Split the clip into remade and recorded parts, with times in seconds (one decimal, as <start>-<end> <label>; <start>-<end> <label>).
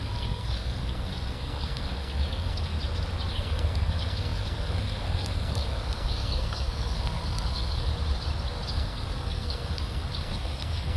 0.0-2.7 remade; 2.7-3.3 recorded; 3.3-7.9 remade; 7.9-8.7 recorded; 8.7-11.0 remade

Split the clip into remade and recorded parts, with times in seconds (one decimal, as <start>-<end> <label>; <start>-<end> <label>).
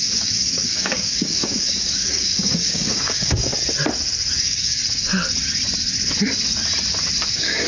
0.0-3.5 remade; 3.5-4.3 recorded; 4.3-4.8 remade; 4.8-7.3 recorded; 7.3-7.7 remade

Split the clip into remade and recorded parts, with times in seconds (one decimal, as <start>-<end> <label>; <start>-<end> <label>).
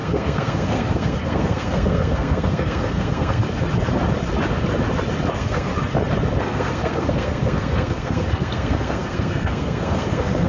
0.0-3.4 remade; 3.4-5.3 recorded; 5.3-5.7 remade; 5.7-6.4 recorded; 6.4-10.5 remade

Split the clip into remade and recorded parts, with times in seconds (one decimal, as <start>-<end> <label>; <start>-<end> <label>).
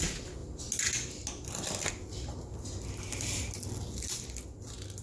0.0-5.0 recorded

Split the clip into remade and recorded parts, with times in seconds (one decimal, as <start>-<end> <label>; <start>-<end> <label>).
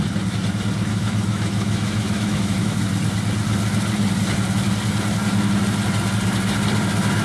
0.0-0.9 recorded; 0.9-2.8 remade; 2.8-7.2 recorded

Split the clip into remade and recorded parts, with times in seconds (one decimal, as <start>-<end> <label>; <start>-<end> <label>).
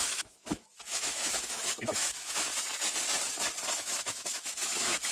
0.0-2.5 remade; 2.5-3.8 recorded; 3.8-5.1 remade